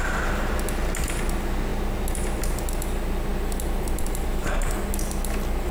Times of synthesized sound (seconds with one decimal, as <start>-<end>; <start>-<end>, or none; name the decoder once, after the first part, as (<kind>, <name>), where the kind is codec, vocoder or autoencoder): none